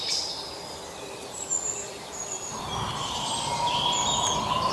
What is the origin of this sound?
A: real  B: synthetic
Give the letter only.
A